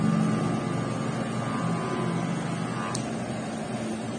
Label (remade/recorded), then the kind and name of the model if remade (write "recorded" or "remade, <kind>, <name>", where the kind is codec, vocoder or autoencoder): recorded